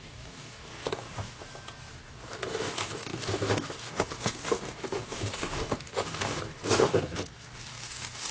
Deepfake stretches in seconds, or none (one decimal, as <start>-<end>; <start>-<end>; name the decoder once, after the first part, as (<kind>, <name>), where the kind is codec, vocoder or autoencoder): 0.0-1.4 (codec, DAC); 1.9-8.3